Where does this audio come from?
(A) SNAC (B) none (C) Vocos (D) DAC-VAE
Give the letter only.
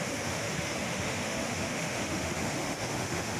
D